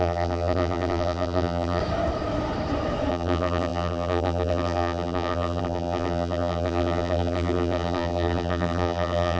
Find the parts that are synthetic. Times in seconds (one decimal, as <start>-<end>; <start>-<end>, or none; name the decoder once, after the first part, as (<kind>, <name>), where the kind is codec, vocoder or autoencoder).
0.0-1.8 (vocoder, BigVGAN v2); 3.1-9.4